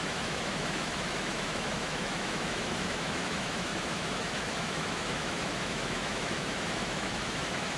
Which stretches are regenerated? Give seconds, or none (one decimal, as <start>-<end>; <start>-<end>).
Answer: 0.0-7.8